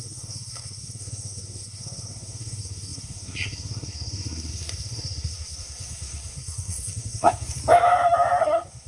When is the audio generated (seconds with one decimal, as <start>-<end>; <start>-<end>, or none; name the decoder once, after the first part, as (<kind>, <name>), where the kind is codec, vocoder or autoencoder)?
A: 0.0-7.6 (codec, SNAC); 8.4-8.9